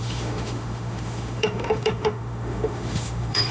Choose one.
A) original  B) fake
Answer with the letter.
B